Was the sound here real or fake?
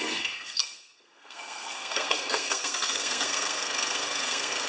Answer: fake